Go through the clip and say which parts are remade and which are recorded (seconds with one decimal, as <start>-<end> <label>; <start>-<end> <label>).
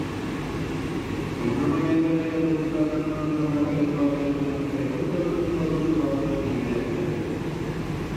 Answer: 0.0-2.6 recorded; 2.6-4.4 remade; 4.4-5.1 recorded; 5.1-6.9 remade; 6.9-8.2 recorded